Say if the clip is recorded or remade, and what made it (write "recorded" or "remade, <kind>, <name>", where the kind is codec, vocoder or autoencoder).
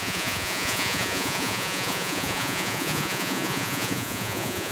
remade, vocoder, Vocos